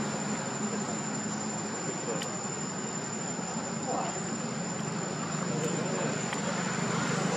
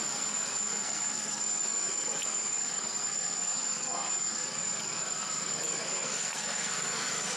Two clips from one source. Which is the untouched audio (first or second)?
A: first